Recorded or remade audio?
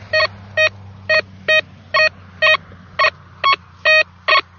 recorded